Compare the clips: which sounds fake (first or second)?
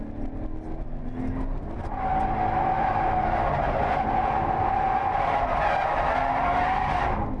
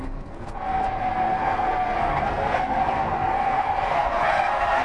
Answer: second